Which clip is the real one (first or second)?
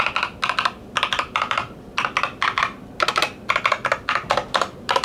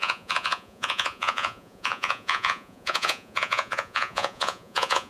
first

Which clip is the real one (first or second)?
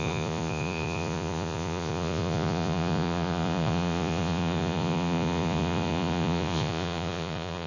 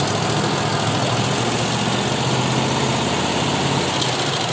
second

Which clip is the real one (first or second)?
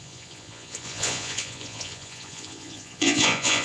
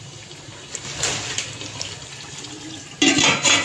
second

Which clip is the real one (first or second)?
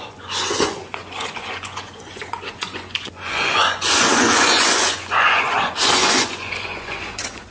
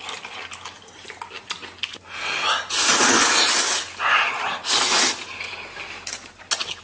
second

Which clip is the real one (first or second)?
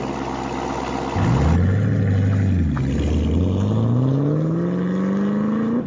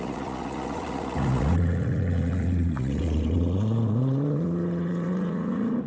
first